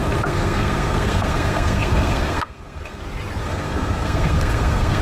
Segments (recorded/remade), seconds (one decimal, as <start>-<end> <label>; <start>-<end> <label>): 0.0-3.0 remade; 3.0-3.4 recorded; 3.4-5.0 remade